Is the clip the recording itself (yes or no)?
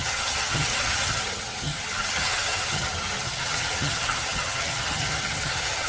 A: no